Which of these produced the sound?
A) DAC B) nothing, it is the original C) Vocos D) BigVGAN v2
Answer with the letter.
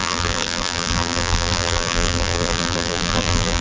D